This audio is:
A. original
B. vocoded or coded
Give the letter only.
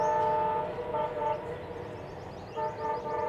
A